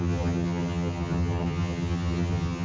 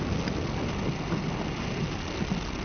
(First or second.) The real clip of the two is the second